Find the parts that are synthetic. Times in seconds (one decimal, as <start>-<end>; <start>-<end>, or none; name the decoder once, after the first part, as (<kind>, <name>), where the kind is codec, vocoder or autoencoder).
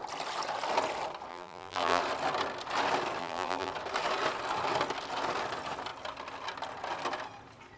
1.3-2.0 (vocoder, BigVGAN v2); 3.2-3.7